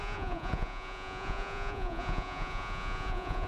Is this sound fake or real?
fake